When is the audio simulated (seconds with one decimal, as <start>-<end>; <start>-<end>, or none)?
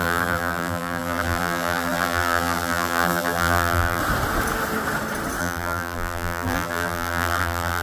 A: 0.0-4.0; 5.4-7.8